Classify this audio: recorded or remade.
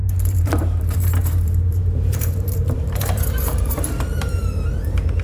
remade